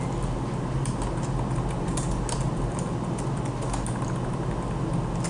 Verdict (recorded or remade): recorded